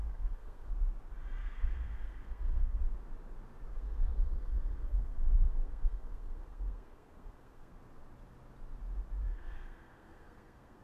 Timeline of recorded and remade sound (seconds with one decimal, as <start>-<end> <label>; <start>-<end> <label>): 0.0-0.7 remade; 0.7-1.4 recorded; 1.4-2.8 remade; 2.8-3.7 recorded; 3.7-7.8 remade; 7.8-9.3 recorded; 9.3-10.8 remade